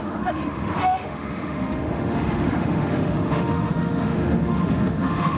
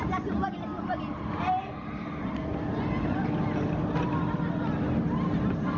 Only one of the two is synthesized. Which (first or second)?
first